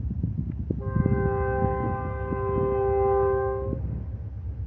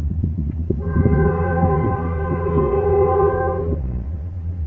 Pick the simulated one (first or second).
second